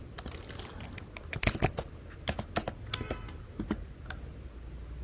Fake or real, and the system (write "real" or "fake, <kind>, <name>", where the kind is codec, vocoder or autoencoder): real